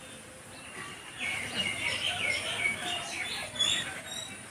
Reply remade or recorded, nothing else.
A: recorded